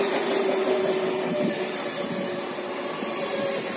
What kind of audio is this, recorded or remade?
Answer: recorded